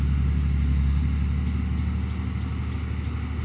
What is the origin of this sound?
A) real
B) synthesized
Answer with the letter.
A